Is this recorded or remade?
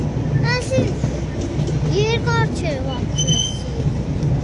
recorded